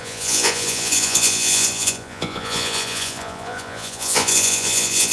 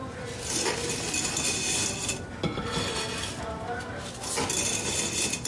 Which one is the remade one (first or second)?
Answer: first